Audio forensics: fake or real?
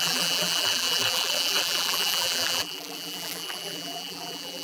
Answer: fake